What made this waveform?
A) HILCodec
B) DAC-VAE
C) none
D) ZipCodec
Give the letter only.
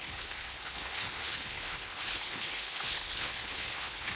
A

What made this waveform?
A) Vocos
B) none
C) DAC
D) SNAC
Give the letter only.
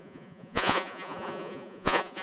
A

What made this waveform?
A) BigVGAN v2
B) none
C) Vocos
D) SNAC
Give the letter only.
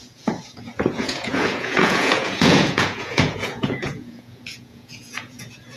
C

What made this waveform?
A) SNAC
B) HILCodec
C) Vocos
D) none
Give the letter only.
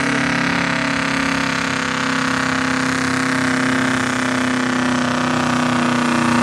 D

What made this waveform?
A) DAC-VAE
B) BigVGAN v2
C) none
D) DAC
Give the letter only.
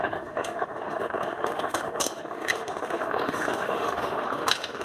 A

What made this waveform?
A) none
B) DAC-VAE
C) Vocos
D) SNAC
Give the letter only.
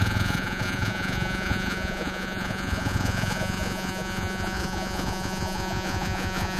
C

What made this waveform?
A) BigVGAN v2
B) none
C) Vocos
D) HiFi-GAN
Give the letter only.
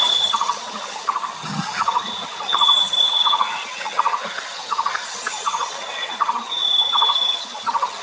D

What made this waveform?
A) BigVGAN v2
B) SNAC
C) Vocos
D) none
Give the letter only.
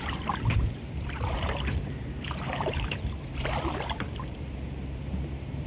A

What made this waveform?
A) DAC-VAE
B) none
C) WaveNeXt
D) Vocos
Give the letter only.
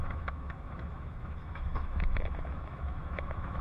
A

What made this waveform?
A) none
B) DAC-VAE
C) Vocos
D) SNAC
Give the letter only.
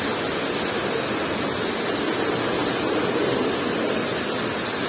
A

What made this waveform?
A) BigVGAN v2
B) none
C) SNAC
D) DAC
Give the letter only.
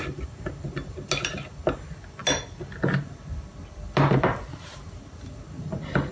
B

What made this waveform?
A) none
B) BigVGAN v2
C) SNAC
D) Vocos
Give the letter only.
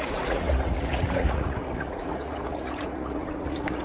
D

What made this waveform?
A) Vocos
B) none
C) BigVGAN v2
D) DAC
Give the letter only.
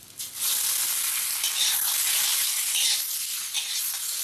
B